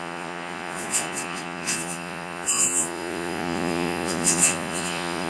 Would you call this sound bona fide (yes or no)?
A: no